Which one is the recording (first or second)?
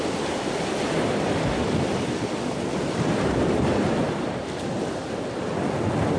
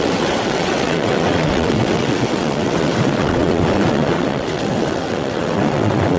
first